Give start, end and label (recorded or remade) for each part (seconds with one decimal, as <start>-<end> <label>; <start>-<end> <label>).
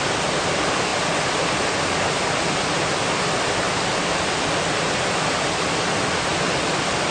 0.0-7.1 recorded